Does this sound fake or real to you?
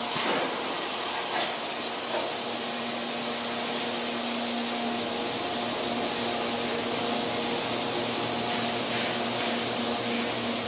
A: real